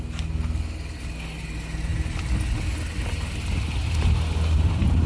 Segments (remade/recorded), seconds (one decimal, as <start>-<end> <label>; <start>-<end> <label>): 0.0-5.1 recorded